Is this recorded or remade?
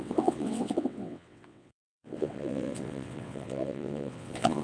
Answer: remade